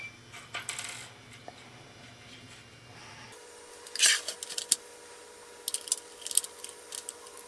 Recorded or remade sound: recorded